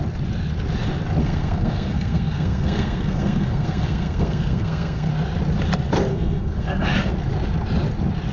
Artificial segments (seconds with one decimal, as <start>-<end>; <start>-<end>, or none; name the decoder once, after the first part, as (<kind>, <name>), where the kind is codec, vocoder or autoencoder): 1.2-5.1 (codec, SNAC); 6.1-7.1